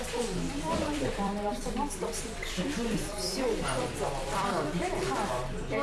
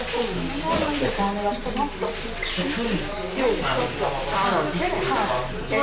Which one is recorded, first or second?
second